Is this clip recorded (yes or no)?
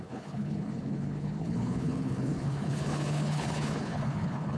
no